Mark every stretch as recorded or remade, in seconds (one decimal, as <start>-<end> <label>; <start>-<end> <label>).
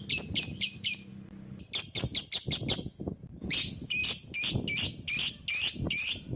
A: 0.0-6.4 recorded